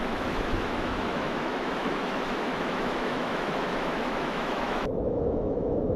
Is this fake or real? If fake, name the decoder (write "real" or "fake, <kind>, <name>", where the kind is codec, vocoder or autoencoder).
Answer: fake, autoencoder, DAC-VAE